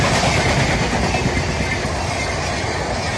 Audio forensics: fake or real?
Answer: real